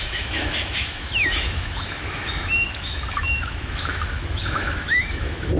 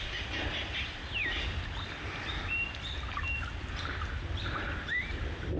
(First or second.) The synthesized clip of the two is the first